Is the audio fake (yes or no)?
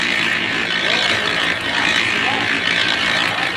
yes